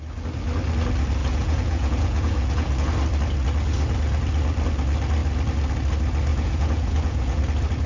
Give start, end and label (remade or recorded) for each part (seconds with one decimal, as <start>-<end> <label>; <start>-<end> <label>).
0.0-1.2 recorded; 1.2-2.7 remade; 2.7-6.3 recorded; 6.3-7.4 remade; 7.4-7.9 recorded